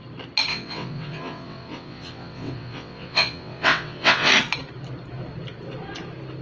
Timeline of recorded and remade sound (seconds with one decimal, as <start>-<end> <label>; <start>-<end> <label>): 0.0-0.5 recorded; 0.5-4.3 remade; 4.3-6.4 recorded